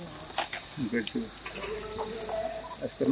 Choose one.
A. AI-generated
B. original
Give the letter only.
B